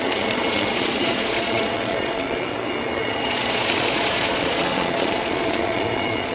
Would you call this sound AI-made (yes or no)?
yes